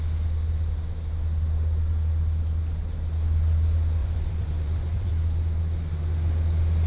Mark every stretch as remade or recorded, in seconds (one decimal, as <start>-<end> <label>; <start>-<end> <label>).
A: 0.0-4.0 recorded; 4.0-5.1 remade; 5.1-6.9 recorded